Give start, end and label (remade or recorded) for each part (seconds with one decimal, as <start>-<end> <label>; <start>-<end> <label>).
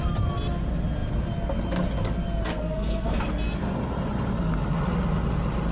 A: 0.0-2.5 recorded; 2.5-3.3 remade; 3.3-5.7 recorded